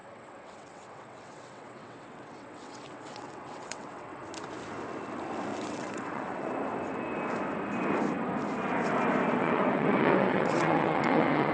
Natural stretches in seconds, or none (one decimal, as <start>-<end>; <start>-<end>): 4.2-5.5; 6.5-9.4